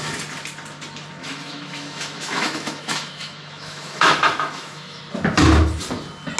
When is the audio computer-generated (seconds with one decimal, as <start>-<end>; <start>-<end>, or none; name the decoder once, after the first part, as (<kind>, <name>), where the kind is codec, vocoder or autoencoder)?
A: 1.2-5.0 (autoencoder, DAC-VAE)